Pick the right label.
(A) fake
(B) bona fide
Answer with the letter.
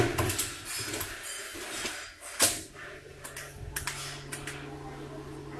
B